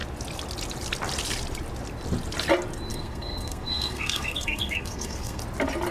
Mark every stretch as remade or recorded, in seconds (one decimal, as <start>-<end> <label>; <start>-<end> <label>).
0.0-2.9 recorded; 2.9-5.4 remade; 5.4-5.9 recorded